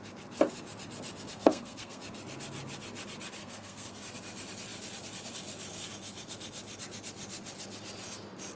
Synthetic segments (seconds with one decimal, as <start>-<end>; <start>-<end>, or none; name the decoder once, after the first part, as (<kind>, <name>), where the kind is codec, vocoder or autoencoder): 1.3-2.0 (codec, SNAC); 3.4-3.9